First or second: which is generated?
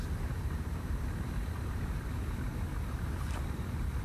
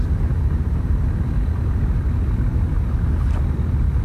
first